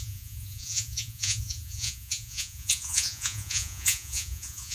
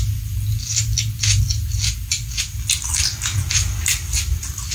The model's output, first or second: first